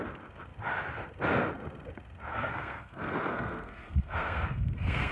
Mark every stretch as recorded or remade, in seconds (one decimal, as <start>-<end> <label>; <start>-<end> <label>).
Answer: 0.0-2.3 recorded; 2.3-5.1 remade